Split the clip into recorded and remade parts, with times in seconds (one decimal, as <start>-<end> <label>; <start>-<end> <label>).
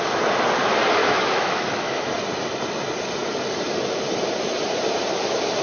0.0-1.0 recorded; 1.0-2.1 remade; 2.1-5.6 recorded